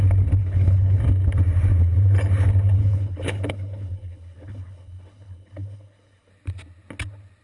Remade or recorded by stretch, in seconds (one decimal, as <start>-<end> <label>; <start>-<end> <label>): 0.0-0.4 recorded; 0.4-1.0 remade; 1.0-2.8 recorded; 2.8-6.3 remade; 6.3-7.4 recorded

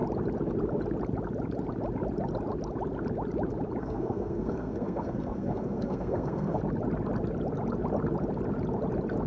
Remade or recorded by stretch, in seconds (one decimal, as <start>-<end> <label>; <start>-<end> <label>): 0.0-3.8 recorded; 3.8-6.6 remade; 6.6-9.3 recorded